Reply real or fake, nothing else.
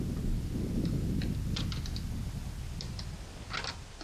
real